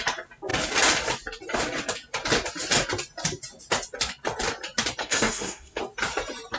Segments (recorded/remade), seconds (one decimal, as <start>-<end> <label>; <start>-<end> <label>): 0.0-5.0 recorded; 5.0-5.8 remade; 5.8-6.6 recorded